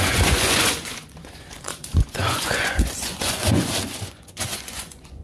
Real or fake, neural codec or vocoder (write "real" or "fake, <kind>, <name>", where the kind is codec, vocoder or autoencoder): fake, vocoder, Vocos